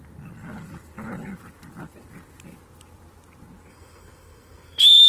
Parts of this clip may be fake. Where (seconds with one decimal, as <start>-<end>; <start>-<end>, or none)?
3.7-5.1